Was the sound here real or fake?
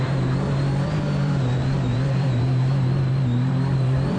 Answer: fake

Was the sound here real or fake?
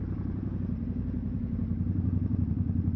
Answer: fake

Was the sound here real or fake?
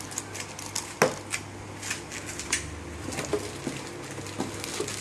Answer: real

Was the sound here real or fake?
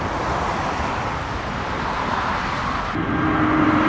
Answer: fake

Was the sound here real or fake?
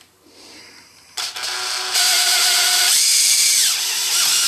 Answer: fake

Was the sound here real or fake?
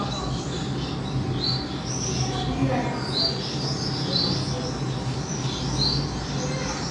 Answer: real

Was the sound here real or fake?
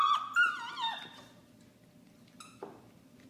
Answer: real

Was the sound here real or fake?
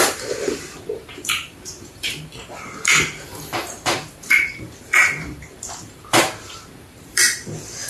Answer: fake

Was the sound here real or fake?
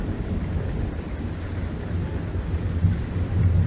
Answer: real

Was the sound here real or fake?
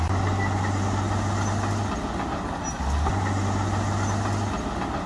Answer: real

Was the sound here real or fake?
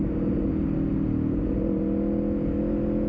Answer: real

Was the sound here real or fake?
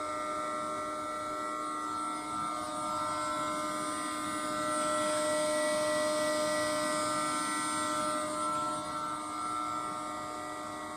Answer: real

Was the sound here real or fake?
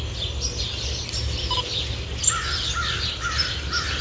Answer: real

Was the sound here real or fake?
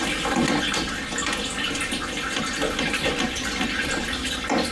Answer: real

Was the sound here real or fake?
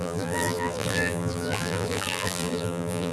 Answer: fake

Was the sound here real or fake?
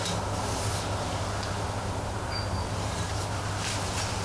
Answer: real